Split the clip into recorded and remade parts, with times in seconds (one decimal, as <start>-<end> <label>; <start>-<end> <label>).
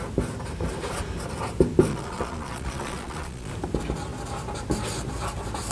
0.0-1.9 recorded; 1.9-3.5 remade; 3.5-5.7 recorded